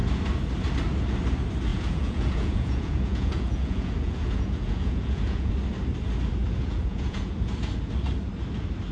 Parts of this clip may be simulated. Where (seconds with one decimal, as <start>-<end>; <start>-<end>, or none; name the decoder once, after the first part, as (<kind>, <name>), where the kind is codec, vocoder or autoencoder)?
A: 1.7-5.5 (vocoder, Vocos); 6.4-7.5